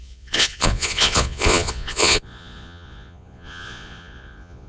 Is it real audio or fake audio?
fake